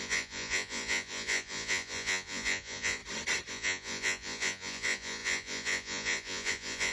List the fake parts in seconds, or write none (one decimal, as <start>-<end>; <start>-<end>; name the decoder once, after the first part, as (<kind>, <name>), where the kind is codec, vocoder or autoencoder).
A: 0.0-3.0 (vocoder, Vocos); 3.5-6.9